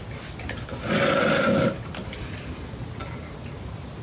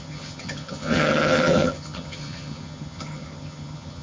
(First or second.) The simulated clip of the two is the second